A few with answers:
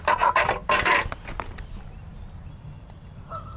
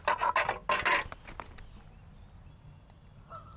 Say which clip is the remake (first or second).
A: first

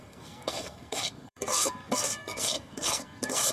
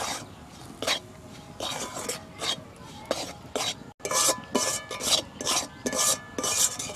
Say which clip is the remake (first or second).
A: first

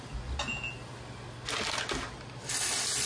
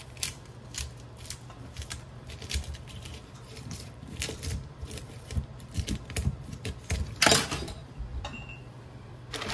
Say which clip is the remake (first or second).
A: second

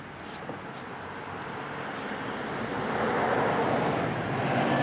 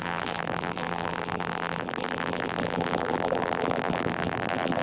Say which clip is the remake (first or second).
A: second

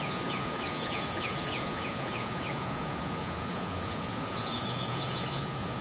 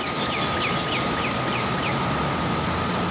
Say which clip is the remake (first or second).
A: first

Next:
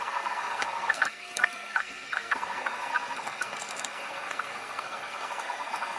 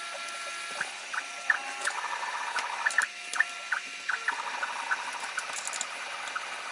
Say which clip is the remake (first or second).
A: first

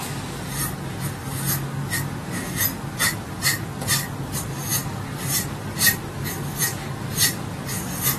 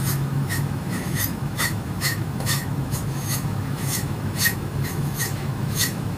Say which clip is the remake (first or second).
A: second